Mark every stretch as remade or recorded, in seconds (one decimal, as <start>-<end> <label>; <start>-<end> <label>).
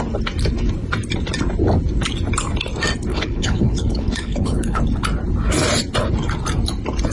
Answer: 0.0-3.1 recorded; 3.1-4.8 remade; 4.8-7.1 recorded